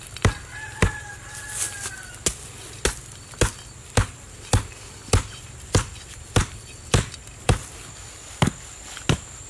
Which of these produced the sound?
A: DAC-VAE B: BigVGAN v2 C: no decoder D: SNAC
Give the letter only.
C